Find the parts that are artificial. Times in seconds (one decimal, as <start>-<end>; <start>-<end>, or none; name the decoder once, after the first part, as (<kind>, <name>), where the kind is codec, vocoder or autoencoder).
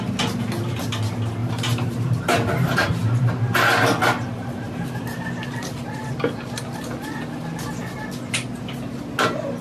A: 1.4-2.2 (vocoder, BigVGAN v2)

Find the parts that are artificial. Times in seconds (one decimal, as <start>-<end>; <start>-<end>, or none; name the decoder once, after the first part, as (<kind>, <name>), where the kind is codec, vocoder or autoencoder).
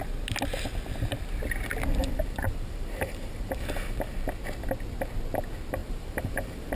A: 2.0-4.1 (vocoder, BigVGAN v2); 5.8-6.7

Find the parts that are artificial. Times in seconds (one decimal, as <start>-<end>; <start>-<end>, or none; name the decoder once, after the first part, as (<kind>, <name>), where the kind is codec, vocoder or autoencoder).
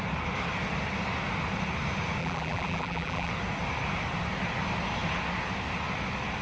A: 2.2-3.3 (vocoder, BigVGAN v2)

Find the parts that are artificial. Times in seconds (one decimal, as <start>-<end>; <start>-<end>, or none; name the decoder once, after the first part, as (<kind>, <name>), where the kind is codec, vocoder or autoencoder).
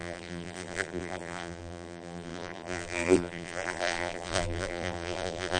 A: 0.0-5.6 (vocoder, BigVGAN v2)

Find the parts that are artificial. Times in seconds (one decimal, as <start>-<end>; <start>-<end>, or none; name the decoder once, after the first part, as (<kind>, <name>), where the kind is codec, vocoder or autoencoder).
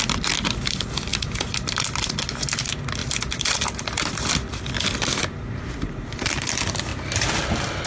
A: 3.0-4.7 (vocoder, BigVGAN v2)